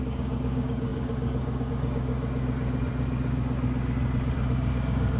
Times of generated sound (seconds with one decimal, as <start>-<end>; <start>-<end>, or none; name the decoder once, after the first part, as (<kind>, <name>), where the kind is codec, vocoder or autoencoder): 0.0-2.1 (codec, DAC); 4.3-5.2